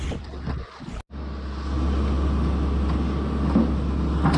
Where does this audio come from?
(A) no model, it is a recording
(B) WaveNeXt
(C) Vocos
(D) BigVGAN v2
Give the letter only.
A